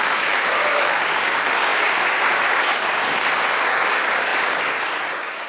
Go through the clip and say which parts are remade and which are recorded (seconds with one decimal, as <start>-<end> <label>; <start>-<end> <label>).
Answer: 0.0-5.5 remade